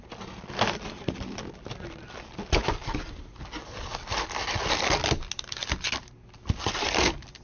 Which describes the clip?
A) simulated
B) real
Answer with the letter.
B